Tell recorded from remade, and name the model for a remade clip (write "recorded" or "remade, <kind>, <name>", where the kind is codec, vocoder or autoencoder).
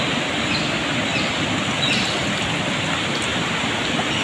recorded